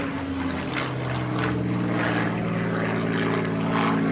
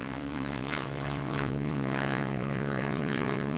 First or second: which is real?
first